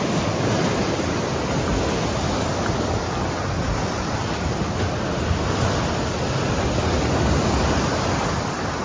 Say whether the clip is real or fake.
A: real